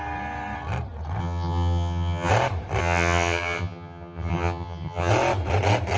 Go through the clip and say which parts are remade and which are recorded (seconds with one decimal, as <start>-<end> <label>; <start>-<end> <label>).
0.0-1.2 recorded; 1.2-2.3 remade; 2.3-2.8 recorded; 2.8-5.1 remade; 5.1-6.0 recorded